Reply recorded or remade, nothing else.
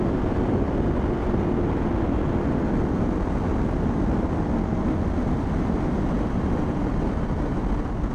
recorded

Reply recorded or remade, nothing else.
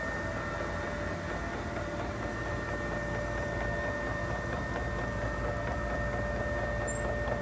recorded